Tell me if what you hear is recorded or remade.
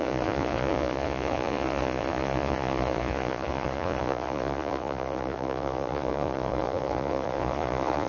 remade